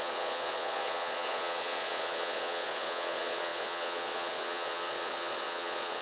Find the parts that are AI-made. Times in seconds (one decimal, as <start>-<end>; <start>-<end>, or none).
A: 0.0-6.0